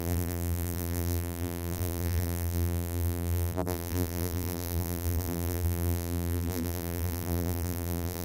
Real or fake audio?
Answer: fake